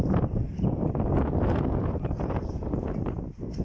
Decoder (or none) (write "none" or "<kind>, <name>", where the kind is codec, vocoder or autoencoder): none